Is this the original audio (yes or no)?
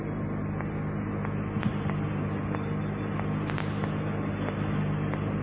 yes